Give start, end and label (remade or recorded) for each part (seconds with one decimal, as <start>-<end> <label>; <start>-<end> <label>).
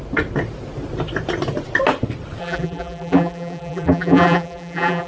0.0-2.4 recorded; 2.4-5.1 remade